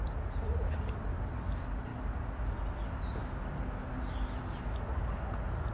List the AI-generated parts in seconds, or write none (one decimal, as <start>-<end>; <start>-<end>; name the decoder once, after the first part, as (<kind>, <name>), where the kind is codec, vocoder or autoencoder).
none